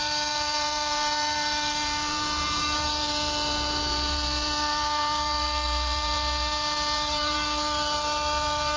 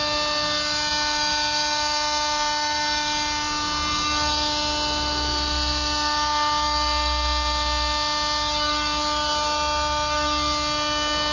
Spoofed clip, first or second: first